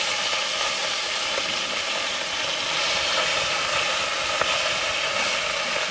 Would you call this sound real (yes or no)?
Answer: yes